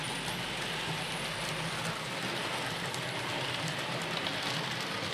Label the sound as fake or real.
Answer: real